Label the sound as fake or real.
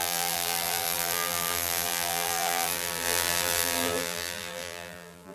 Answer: fake